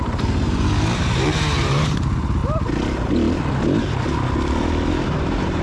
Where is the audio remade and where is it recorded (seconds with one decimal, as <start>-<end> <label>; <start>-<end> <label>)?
0.0-2.4 remade; 2.4-4.9 recorded; 4.9-5.6 remade